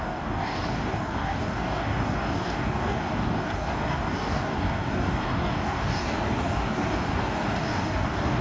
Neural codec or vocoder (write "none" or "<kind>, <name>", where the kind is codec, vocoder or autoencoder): codec, DAC